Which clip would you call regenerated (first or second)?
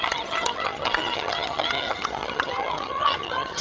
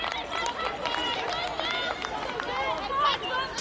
first